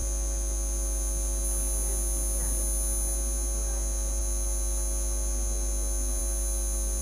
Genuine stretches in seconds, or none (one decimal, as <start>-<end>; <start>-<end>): 0.0-7.0